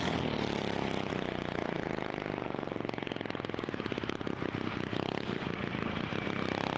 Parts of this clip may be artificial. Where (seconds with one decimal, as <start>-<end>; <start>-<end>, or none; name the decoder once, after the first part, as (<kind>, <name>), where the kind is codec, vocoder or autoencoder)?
none